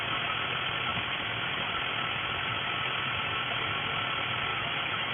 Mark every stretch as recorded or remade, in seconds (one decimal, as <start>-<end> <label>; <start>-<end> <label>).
0.0-4.5 recorded; 4.5-5.1 remade